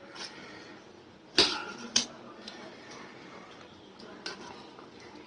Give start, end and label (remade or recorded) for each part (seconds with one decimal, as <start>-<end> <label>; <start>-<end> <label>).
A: 0.0-5.3 recorded